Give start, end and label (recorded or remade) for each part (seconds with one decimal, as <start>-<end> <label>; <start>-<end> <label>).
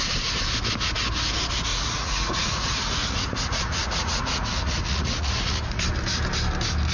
0.0-1.7 recorded; 1.7-5.8 remade; 5.8-6.9 recorded